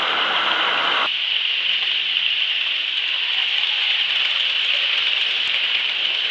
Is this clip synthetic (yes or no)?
yes